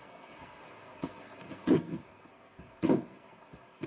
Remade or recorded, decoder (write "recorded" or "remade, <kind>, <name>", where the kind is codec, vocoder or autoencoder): remade, codec, SNAC